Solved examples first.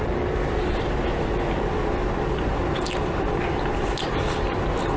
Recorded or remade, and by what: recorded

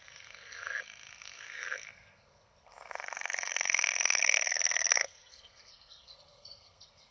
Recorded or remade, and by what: remade, codec, SNAC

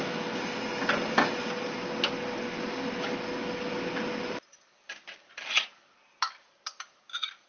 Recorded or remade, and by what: recorded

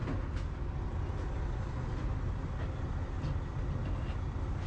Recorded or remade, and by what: recorded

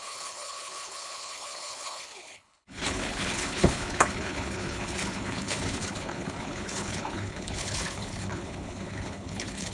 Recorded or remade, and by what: remade, codec, HILCodec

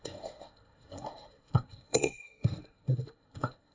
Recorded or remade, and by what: remade, codec, SNAC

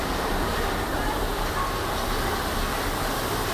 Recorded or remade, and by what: recorded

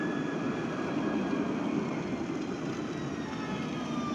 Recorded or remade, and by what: recorded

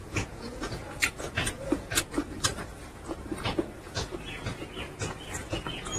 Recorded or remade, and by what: remade, vocoder, Vocos